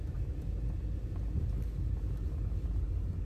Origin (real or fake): real